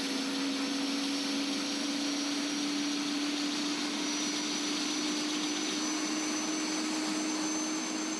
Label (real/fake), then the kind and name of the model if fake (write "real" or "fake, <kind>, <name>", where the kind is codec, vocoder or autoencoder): real